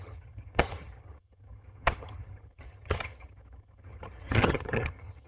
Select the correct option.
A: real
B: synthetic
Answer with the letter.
B